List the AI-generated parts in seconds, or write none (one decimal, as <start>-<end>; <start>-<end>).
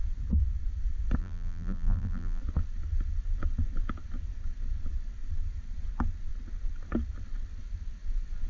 1.2-2.4